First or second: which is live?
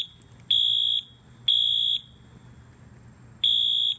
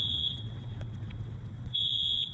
first